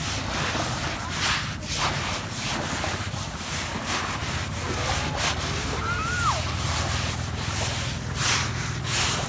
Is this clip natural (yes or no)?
yes